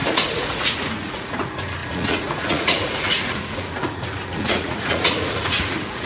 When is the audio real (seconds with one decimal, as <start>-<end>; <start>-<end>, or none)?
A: none